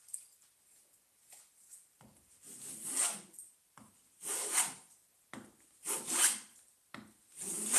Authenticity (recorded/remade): recorded